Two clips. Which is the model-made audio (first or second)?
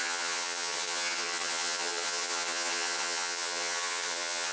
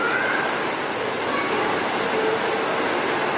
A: first